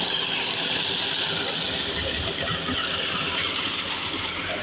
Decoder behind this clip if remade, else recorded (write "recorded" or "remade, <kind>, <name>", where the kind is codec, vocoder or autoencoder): recorded